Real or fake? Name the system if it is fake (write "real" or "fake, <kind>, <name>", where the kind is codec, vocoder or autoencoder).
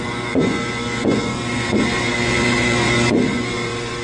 fake, vocoder, Vocos